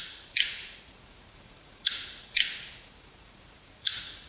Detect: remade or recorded remade